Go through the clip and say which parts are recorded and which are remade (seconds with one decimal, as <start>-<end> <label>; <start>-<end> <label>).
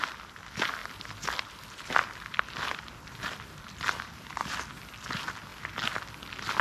0.0-0.8 recorded; 0.8-4.8 remade; 4.8-6.6 recorded